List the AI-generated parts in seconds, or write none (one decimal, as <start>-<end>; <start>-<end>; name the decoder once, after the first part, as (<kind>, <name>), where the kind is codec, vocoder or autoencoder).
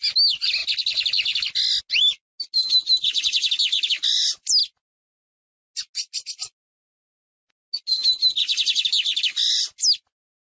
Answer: none